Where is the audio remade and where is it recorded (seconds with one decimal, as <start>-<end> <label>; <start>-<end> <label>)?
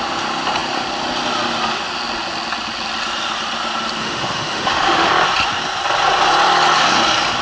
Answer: 0.0-4.0 recorded; 4.0-5.1 remade; 5.1-7.4 recorded